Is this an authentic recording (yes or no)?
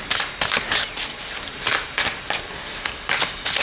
yes